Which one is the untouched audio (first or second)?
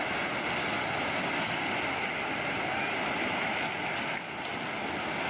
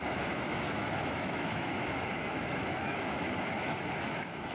first